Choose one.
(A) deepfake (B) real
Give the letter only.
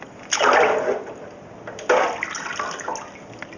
B